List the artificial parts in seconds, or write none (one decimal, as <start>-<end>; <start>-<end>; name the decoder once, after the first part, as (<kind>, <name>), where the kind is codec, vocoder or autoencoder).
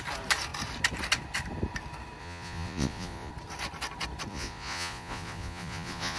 2.2-3.3 (vocoder, Vocos); 4.3-6.2